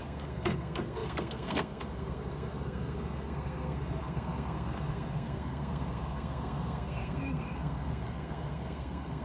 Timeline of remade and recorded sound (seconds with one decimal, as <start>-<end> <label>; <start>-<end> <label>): 0.0-9.2 remade